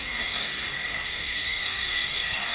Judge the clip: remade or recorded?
remade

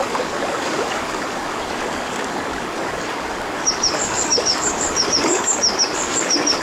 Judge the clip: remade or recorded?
remade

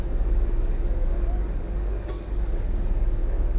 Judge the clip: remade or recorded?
remade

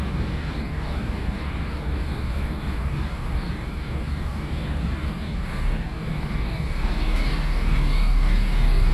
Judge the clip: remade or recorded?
remade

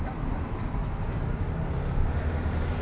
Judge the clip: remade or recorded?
recorded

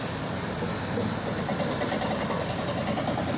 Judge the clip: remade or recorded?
recorded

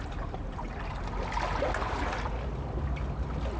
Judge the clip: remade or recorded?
recorded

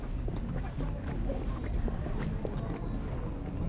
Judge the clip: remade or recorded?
recorded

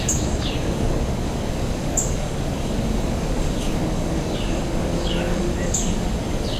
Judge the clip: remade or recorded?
remade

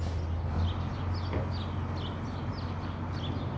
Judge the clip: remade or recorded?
recorded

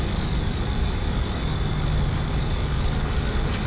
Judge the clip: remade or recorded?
remade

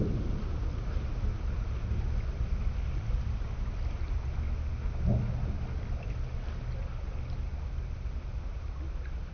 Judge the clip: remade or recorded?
recorded